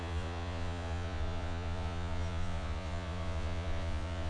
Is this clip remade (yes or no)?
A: yes